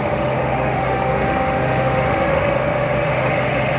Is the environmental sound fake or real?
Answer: fake